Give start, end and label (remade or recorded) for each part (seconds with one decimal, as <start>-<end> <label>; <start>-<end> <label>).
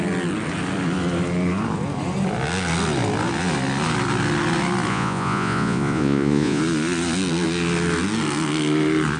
0.0-4.9 recorded; 4.9-6.6 remade; 6.6-9.2 recorded